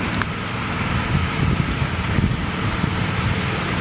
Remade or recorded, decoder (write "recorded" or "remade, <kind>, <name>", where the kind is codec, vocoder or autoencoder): recorded